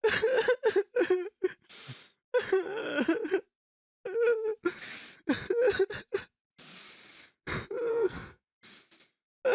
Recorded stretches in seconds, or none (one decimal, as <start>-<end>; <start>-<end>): 0.0-7.9; 8.6-9.5